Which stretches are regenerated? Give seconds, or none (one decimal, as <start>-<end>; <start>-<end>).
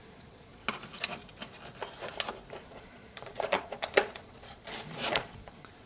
0.0-0.5; 2.6-5.9